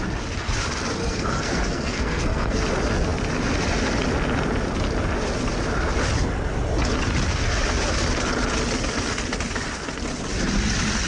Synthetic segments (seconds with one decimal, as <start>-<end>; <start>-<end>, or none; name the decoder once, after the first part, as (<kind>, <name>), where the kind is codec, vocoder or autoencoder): 1.0-2.6 (codec, SNAC)